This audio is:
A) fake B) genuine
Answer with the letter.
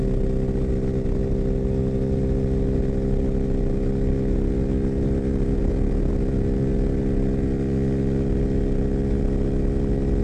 B